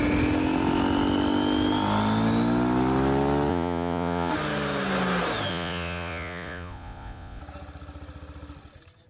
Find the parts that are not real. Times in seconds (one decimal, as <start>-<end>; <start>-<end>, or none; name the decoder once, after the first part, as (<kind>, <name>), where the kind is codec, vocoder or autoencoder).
3.5-4.3 (vocoder, Vocos); 5.5-7.4